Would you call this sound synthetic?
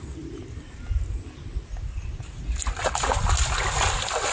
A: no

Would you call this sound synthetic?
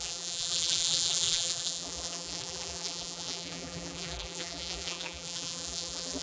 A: yes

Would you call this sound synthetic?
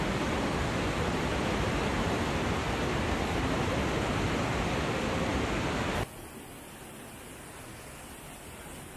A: no